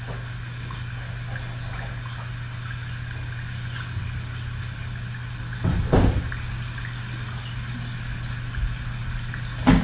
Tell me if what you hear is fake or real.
real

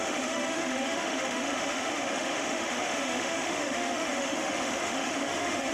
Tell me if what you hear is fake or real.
fake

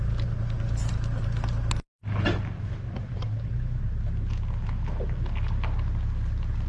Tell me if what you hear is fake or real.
real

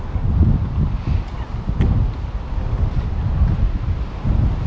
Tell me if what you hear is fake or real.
real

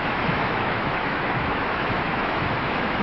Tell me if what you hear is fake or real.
fake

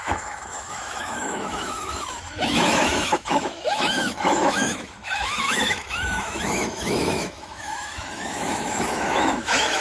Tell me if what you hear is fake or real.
fake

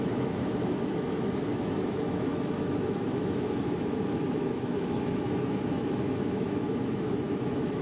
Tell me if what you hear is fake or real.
fake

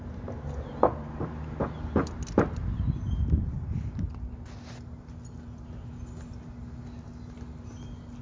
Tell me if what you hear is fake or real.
real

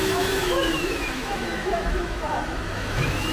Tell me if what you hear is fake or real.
fake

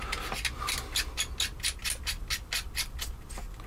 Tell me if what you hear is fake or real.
real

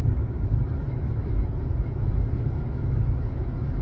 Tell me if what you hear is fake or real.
fake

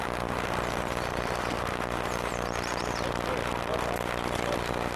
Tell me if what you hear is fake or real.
real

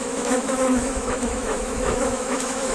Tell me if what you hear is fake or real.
fake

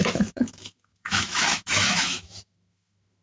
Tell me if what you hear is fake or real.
fake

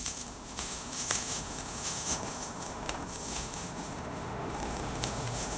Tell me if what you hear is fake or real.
fake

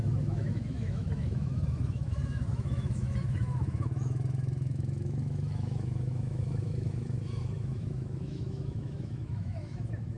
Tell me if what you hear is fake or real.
fake